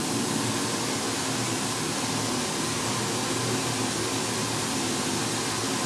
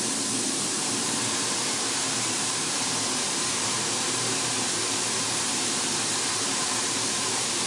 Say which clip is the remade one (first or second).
second